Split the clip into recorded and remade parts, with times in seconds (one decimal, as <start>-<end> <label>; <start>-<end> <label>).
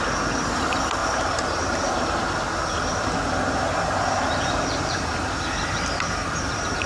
0.0-1.0 recorded; 1.0-1.9 remade; 1.9-4.2 recorded; 4.2-6.9 remade